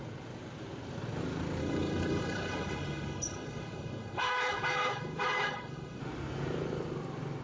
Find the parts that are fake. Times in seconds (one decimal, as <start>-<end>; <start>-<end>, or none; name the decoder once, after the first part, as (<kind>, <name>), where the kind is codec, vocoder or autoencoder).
1.6-6.0 (codec, HILCodec)